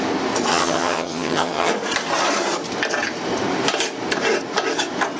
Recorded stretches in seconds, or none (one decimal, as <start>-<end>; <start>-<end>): 0.0-0.5; 1.7-5.2